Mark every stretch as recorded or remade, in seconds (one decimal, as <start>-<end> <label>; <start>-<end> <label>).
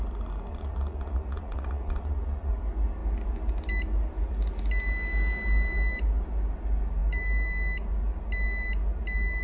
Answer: 0.0-0.5 recorded; 0.5-2.5 remade; 2.5-9.4 recorded